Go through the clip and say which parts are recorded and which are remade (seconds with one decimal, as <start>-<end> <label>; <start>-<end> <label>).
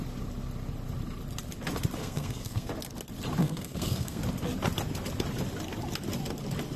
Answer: 0.0-2.0 recorded; 2.0-2.7 remade; 2.7-3.4 recorded; 3.4-4.2 remade; 4.2-6.8 recorded